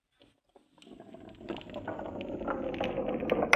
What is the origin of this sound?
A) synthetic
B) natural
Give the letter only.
B